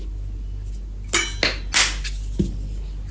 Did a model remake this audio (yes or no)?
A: no